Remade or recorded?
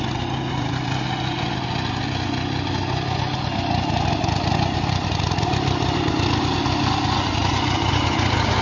recorded